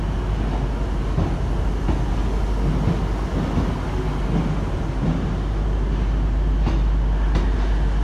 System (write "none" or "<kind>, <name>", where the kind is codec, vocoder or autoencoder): none